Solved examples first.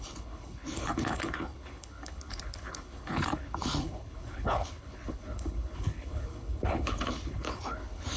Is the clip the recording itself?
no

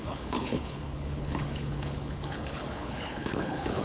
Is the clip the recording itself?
no